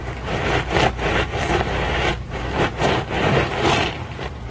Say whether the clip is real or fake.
fake